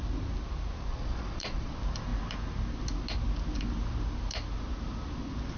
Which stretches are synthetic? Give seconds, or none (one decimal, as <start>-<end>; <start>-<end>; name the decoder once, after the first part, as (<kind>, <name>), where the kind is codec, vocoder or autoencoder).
0.9-1.7 (vocoder, Vocos)